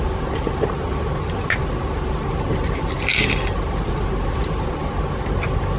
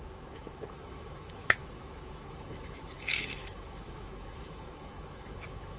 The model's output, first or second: second